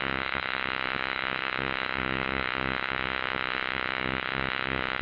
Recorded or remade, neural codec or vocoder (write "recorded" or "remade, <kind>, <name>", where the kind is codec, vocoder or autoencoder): remade, codec, DAC